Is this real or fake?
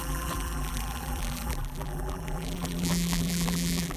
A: fake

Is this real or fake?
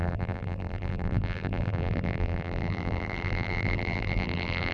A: fake